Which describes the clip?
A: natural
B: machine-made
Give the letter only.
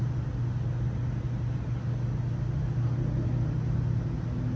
A